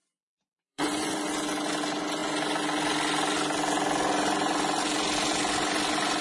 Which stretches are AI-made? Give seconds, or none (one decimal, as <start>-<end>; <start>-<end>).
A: 0.0-1.2